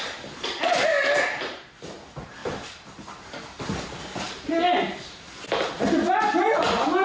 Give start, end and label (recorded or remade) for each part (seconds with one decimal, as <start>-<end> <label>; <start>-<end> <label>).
0.0-7.0 recorded